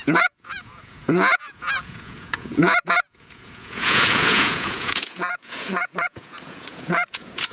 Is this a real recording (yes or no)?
no